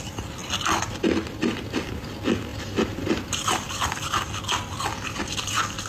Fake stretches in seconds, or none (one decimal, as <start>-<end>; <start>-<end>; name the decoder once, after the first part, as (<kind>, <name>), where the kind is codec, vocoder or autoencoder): 2.5-3.9 (vocoder, BigVGAN v2)